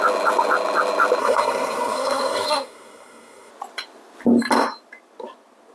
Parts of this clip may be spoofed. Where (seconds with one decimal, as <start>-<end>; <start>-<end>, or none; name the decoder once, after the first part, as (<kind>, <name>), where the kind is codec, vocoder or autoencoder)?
1.2-3.5 (codec, SNAC)